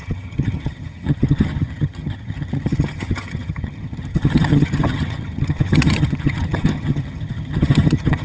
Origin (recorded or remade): remade